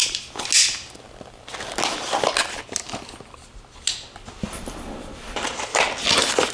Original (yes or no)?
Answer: yes